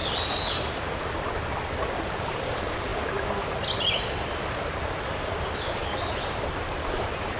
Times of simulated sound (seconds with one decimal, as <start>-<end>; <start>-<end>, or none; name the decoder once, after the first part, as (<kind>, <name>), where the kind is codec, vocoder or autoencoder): none